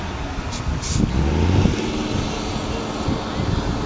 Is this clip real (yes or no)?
yes